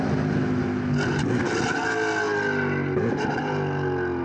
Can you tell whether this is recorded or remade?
recorded